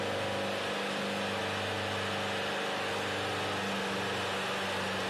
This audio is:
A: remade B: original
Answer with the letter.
B